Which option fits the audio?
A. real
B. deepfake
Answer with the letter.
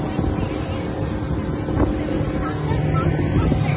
A